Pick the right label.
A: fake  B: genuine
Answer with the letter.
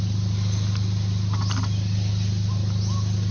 B